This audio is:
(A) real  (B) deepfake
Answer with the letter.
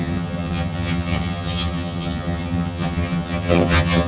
B